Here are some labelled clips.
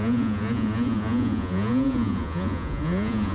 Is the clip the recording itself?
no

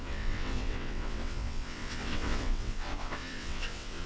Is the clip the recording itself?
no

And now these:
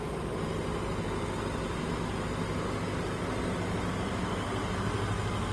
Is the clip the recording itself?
yes